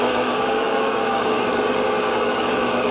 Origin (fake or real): fake